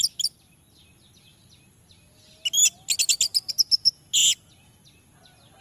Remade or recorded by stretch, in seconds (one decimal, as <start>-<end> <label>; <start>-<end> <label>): 0.0-5.6 recorded